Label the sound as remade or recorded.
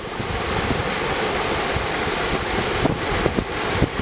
recorded